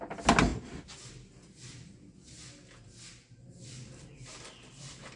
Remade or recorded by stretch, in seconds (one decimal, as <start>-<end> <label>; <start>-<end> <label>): 0.0-5.2 recorded